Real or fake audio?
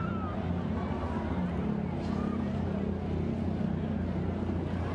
real